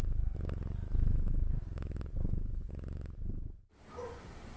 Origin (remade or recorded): recorded